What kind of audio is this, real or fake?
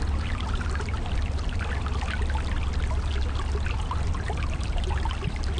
real